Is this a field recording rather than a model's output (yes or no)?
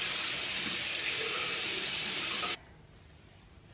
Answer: no